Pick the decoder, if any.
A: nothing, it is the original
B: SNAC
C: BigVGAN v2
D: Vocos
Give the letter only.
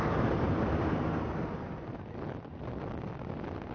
A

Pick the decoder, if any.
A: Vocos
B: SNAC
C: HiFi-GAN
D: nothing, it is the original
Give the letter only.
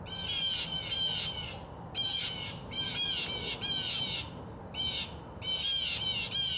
D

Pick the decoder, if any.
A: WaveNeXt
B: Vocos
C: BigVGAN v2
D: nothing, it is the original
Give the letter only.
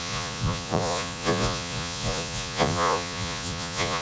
B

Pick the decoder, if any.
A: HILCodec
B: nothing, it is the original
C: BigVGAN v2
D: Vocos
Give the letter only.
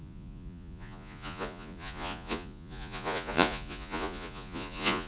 D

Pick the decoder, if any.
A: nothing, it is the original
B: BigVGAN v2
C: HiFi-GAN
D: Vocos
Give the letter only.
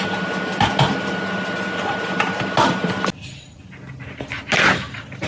A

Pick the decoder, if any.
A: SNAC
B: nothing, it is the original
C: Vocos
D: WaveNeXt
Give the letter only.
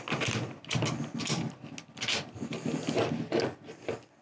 B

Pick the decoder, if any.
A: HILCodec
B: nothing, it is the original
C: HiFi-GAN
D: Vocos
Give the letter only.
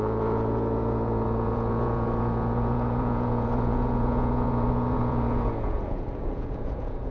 D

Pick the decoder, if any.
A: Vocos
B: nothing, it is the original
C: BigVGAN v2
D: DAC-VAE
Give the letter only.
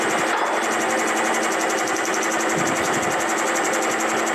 B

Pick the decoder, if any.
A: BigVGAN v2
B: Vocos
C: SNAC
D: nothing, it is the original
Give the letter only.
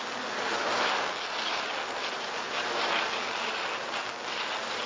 D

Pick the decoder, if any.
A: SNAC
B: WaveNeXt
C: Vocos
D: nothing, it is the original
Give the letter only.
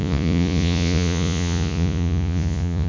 C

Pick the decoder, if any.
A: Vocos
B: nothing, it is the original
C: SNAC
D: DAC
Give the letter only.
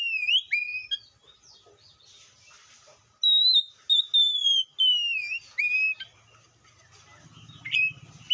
B